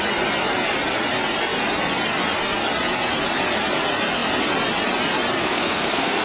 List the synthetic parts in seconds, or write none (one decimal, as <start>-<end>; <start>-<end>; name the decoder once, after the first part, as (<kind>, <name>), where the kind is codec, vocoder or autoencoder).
5.4-6.2 (codec, SNAC)